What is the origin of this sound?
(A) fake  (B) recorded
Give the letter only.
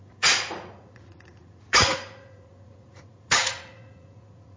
A